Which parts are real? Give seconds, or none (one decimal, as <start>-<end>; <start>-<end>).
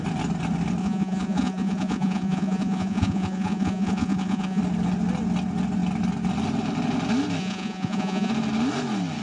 0.0-0.8; 4.6-7.4; 8.3-9.2